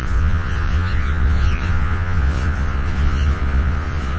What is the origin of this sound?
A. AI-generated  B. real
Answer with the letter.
A